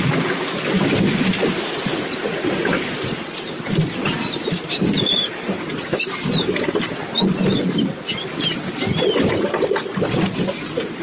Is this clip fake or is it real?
real